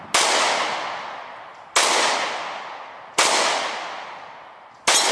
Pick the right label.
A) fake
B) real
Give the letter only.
B